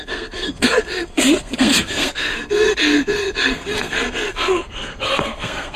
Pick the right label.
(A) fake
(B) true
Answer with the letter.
A